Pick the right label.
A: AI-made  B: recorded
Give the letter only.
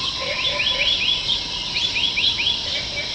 B